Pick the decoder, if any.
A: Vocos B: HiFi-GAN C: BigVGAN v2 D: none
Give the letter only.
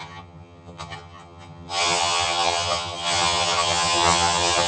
B